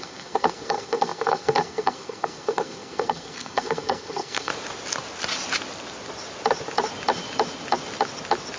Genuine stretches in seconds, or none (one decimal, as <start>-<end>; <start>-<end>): 4.5-8.6